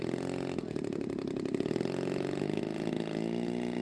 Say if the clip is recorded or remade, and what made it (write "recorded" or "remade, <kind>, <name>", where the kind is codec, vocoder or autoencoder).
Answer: recorded